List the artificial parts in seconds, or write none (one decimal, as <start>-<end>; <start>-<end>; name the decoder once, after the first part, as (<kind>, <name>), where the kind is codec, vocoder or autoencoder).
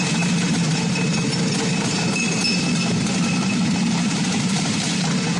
0.0-2.4 (vocoder, BigVGAN v2); 3.0-5.4